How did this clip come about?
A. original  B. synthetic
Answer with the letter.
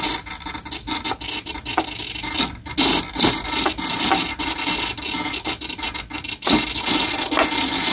A